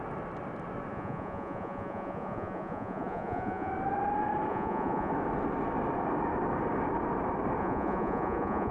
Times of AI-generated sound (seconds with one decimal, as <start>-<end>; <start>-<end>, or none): 0.9-3.7; 4.5-5.1; 7.6-8.7